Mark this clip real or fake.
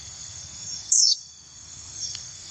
fake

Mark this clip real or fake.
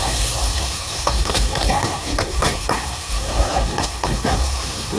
fake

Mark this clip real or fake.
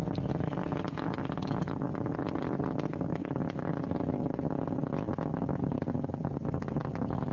real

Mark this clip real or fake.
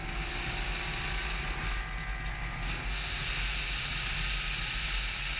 real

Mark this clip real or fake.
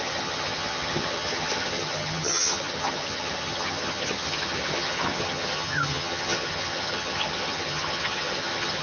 fake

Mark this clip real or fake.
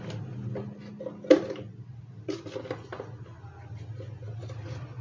real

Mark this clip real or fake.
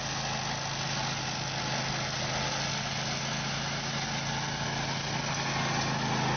real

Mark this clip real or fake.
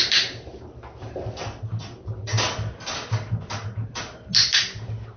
real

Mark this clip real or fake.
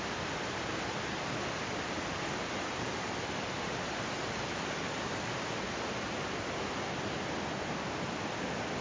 real